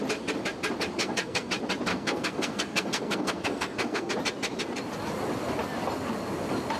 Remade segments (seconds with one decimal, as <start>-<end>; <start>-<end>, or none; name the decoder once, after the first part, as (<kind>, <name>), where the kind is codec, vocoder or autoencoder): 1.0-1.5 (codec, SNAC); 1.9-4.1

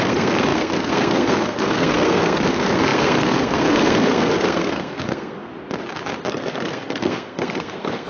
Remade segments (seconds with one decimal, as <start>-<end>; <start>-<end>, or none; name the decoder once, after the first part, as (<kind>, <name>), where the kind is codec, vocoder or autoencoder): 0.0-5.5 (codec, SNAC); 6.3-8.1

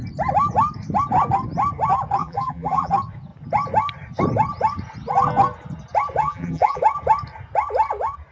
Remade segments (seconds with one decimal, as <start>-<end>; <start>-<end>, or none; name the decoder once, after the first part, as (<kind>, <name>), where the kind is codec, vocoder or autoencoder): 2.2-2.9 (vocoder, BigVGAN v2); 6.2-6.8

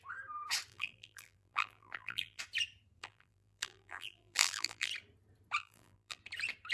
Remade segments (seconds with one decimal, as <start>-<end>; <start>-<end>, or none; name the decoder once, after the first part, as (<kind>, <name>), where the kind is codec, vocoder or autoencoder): 0.7-2.4 (vocoder, BigVGAN v2); 3.0-4.9; 5.6-6.2

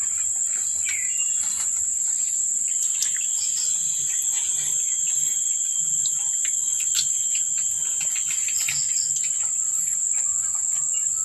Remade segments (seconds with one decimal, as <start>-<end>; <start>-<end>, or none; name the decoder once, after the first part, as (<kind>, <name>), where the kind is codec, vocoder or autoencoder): 1.2-6.3 (vocoder, BigVGAN v2)